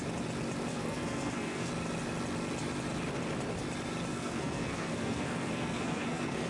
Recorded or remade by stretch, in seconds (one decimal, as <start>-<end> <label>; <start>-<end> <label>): 0.0-0.7 recorded; 0.7-1.7 remade; 1.7-4.1 recorded; 4.1-6.5 remade